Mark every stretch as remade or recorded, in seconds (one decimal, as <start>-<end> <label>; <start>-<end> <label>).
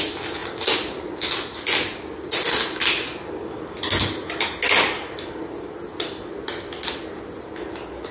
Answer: 0.0-0.4 recorded; 0.4-1.0 remade; 1.0-8.1 recorded